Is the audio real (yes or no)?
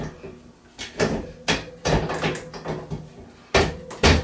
yes